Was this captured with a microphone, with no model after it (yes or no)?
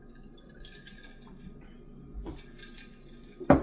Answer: yes